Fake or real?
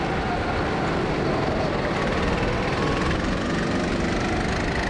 real